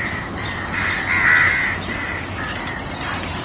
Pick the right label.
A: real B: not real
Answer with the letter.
A